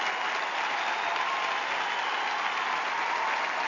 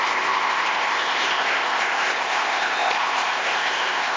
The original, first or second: first